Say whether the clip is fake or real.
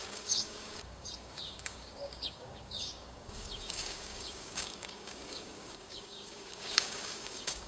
fake